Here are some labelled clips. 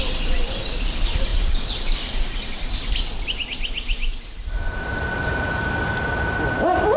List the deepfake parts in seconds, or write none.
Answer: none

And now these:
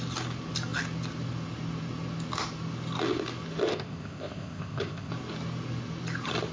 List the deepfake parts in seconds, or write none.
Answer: 3.7-5.1

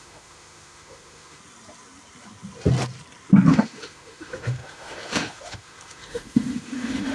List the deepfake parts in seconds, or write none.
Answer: 0.0-1.4; 3.5-7.1

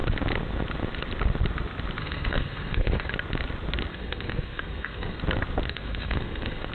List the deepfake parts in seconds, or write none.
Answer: 2.0-3.1; 3.9-5.2; 5.7-6.7